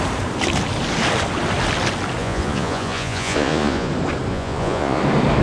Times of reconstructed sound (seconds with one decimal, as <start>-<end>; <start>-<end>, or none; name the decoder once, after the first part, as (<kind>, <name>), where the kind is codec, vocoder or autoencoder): 2.2-3.9 (vocoder, Vocos); 4.3-5.0